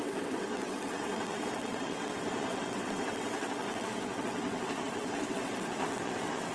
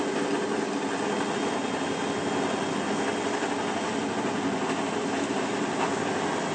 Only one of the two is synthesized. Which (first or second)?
first